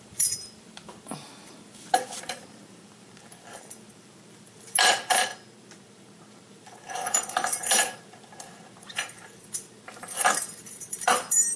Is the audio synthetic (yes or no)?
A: yes